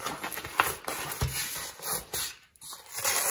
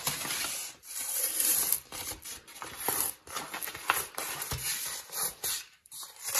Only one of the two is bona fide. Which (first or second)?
first